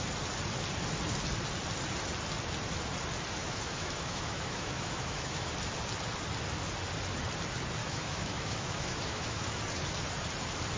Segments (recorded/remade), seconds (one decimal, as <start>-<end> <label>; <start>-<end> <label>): 0.0-3.4 recorded; 3.4-5.5 remade; 5.5-7.8 recorded; 7.8-9.6 remade; 9.6-10.8 recorded